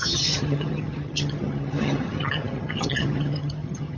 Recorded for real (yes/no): no